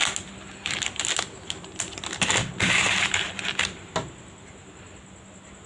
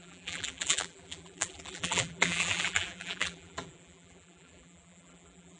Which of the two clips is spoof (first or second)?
second